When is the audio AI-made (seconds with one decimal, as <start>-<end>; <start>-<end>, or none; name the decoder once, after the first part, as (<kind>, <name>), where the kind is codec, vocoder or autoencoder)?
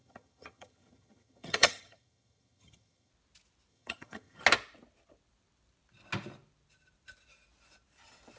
0.0-3.1 (vocoder, HiFi-GAN); 3.7-4.4